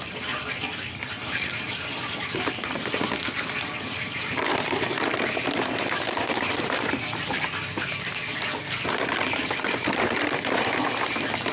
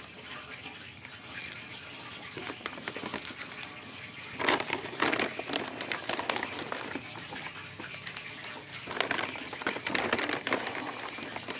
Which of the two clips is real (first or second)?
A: second